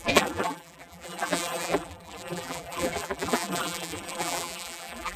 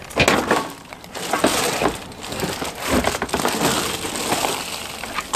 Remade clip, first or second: first